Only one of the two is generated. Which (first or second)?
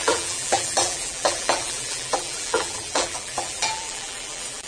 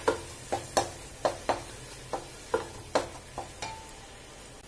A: first